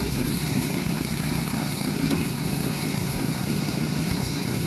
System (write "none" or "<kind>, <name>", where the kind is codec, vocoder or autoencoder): codec, SNAC